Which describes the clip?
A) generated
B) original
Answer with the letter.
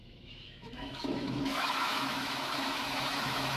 A